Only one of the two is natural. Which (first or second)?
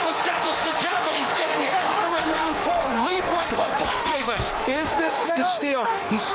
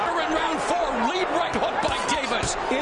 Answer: second